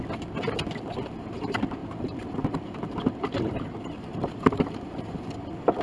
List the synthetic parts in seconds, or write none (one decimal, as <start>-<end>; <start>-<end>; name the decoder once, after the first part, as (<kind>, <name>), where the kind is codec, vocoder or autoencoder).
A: 1.8-5.1 (vocoder, BigVGAN v2)